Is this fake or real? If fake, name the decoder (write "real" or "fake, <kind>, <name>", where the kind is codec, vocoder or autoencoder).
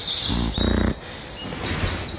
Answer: real